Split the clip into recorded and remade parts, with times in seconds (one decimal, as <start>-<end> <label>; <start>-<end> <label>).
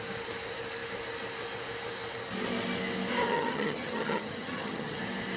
0.0-3.3 recorded; 3.3-5.0 remade; 5.0-5.4 recorded